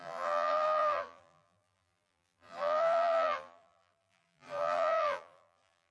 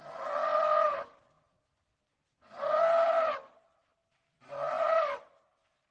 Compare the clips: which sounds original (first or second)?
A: second